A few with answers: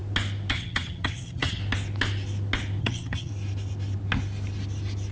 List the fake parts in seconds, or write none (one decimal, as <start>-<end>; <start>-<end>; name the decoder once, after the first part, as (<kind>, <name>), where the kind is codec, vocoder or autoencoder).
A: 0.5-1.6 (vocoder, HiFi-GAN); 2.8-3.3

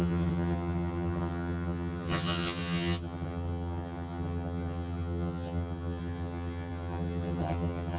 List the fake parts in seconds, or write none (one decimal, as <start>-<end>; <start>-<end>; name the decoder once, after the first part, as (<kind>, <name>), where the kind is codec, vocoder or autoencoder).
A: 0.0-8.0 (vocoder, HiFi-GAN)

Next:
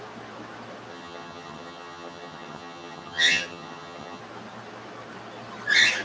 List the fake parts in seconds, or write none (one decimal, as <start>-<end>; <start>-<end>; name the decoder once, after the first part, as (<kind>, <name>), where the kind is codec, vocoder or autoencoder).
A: 0.9-4.2 (vocoder, HiFi-GAN)

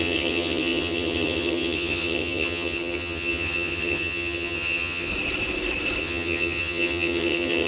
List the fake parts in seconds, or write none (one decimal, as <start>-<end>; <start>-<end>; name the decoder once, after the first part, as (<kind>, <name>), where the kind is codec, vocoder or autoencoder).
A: 0.0-5.1 (vocoder, HiFi-GAN); 6.0-7.7